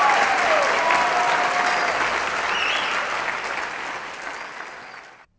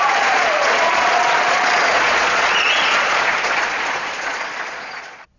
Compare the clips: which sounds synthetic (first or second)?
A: second